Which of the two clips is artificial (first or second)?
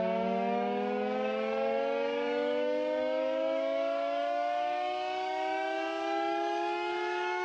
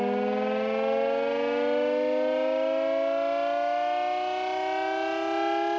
first